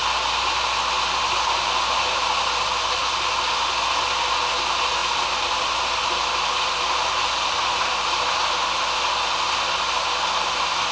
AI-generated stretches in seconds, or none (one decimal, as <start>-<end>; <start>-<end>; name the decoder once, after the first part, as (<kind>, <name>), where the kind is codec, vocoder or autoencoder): none

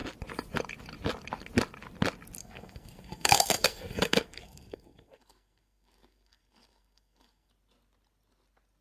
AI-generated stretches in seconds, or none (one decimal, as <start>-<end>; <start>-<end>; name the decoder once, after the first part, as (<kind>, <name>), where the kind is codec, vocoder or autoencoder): 2.4-7.5 (codec, SNAC)